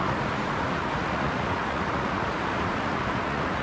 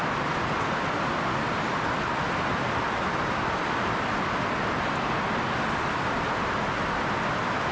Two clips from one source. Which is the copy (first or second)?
first